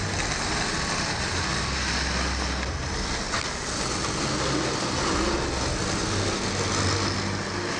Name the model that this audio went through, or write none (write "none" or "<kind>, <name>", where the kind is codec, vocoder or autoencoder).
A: none